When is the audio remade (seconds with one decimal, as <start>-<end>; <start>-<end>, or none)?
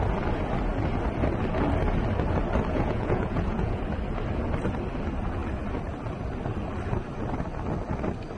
2.7-3.8